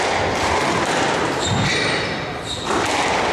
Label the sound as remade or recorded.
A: recorded